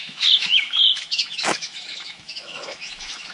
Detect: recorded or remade remade